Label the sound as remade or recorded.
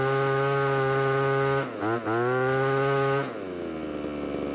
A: recorded